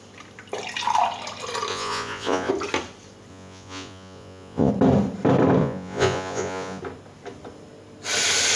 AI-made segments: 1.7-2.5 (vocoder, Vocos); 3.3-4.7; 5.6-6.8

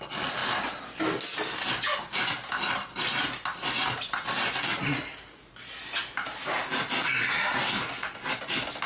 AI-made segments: none

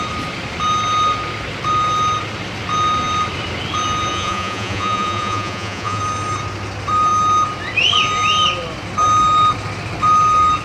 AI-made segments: 4.1-6.0 (vocoder, Vocos)

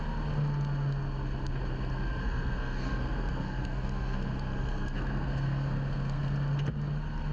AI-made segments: 2.2-6.2 (codec, SNAC)

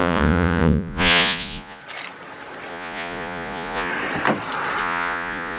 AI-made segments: 0.0-1.8 (vocoder, Vocos); 2.7-3.9; 4.8-5.6

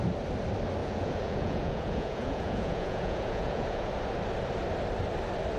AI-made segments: 0.8-3.9 (vocoder, Vocos)

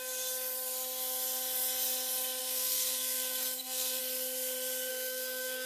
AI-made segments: 2.4-4.0 (codec, SNAC); 4.9-5.7